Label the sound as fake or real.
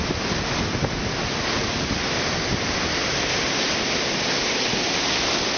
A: real